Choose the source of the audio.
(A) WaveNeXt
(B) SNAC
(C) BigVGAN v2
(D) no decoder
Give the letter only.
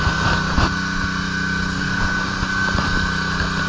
D